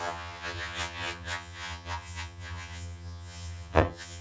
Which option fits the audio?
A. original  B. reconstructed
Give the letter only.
B